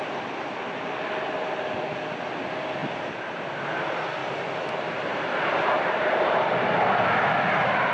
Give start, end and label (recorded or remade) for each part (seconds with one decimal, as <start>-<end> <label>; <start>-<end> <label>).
0.0-4.2 recorded; 4.2-7.0 remade; 7.0-7.9 recorded